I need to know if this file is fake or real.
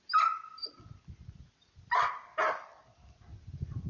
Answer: real